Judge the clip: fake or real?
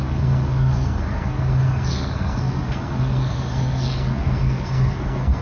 fake